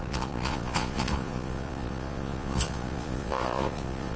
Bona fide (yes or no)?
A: no